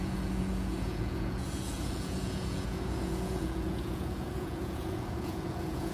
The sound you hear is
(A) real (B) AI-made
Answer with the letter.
B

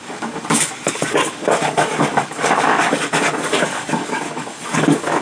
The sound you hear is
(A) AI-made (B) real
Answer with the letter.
A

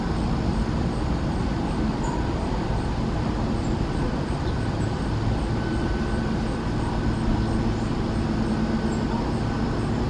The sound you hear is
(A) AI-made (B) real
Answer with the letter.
B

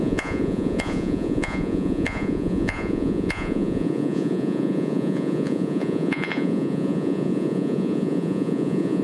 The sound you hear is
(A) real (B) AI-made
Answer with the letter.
B